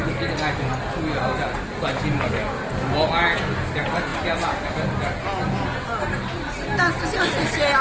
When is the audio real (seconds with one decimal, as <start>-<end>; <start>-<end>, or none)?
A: 0.0-4.1; 5.0-7.8